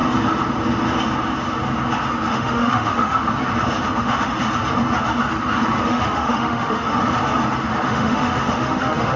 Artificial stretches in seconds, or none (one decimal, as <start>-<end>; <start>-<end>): 2.3-3.3; 4.0-4.4; 5.8-7.0; 7.8-9.2